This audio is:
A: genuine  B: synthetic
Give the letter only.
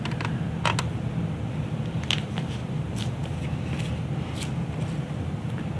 A